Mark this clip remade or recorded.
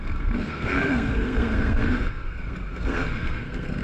remade